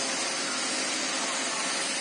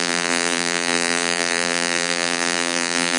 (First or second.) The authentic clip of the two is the first